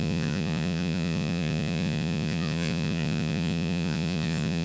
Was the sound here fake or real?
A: fake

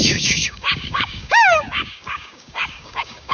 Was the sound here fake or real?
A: fake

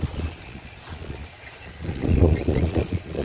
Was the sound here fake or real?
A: fake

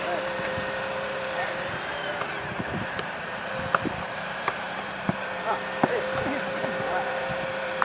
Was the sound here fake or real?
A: fake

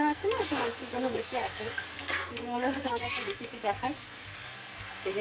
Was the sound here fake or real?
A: fake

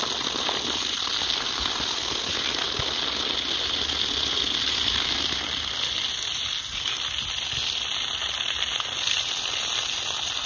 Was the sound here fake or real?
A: real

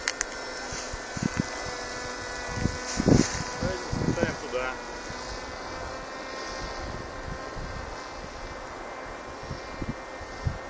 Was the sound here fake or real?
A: real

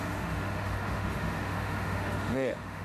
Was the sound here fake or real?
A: fake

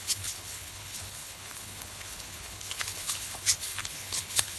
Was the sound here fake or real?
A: fake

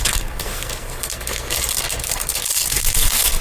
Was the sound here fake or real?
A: fake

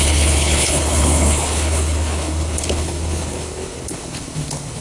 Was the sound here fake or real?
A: fake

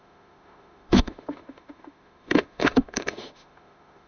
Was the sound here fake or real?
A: fake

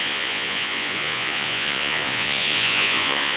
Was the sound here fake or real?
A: fake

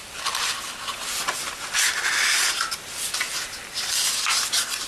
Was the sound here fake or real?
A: real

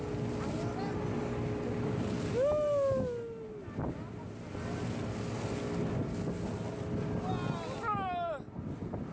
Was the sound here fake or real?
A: real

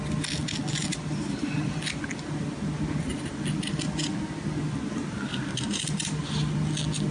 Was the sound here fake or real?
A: real